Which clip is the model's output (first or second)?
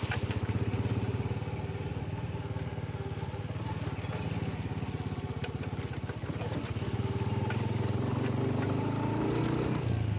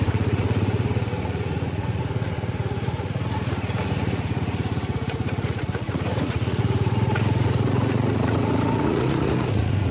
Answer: second